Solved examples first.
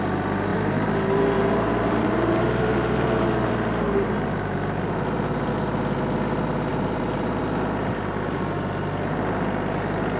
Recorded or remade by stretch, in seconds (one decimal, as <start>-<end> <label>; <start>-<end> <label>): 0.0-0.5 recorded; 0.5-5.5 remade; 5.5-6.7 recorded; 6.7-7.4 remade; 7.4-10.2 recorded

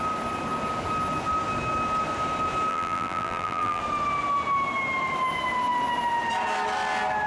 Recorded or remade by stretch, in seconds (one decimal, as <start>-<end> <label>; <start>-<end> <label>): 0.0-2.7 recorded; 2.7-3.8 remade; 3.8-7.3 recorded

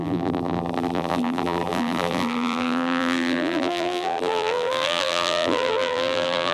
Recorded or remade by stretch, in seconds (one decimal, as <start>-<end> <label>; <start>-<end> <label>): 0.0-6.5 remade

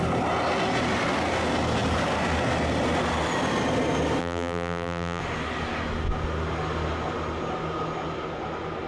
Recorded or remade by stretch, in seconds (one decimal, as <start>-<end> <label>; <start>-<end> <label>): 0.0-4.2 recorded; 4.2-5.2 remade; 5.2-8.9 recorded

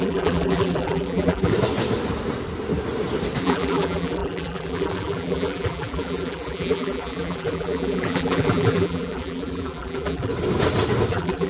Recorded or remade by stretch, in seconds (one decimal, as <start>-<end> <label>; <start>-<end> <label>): 0.0-1.5 remade; 1.5-3.4 recorded; 3.4-10.3 remade; 10.3-11.1 recorded; 11.1-11.5 remade

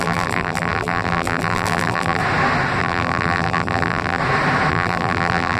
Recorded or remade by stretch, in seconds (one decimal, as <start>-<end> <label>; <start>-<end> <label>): 0.0-2.2 remade; 2.2-2.8 recorded; 2.8-4.2 remade; 4.2-4.7 recorded; 4.7-5.6 remade